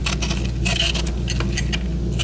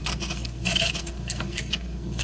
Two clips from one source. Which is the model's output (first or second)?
second